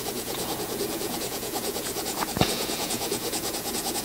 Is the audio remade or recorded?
remade